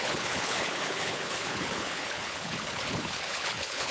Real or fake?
fake